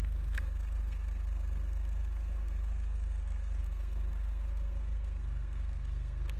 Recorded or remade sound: remade